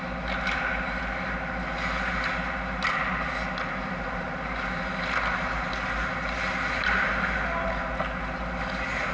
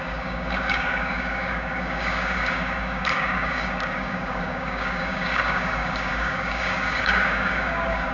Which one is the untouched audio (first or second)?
first